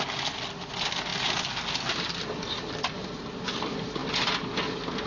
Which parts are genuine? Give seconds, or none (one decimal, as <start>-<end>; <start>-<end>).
0.0-5.1